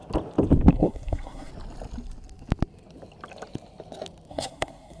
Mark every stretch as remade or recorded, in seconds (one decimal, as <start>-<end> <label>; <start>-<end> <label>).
0.0-0.7 recorded; 0.7-1.5 remade; 1.5-4.3 recorded; 4.3-5.0 remade